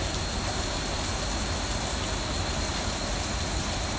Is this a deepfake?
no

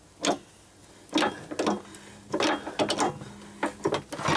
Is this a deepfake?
no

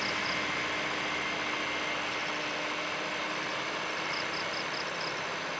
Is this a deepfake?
no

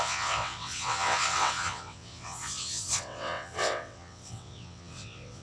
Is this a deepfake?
yes